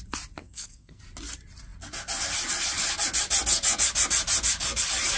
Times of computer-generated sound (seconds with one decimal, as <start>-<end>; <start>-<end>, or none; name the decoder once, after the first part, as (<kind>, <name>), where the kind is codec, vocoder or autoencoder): 0.4-1.0 (codec, SNAC)